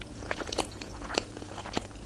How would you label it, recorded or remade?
remade